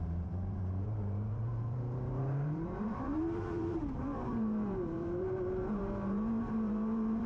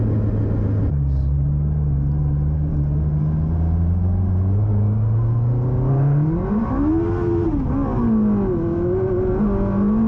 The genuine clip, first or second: second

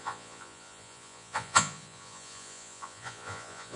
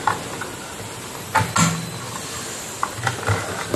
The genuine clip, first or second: second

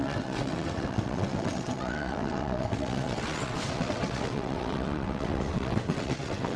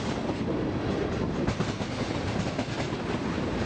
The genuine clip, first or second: second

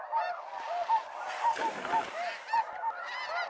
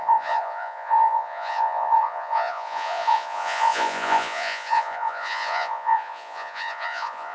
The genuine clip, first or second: first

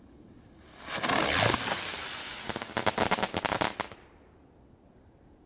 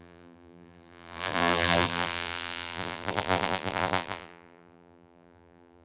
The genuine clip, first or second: first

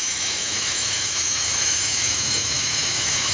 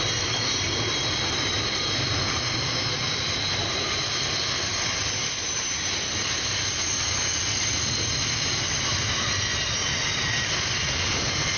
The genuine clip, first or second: second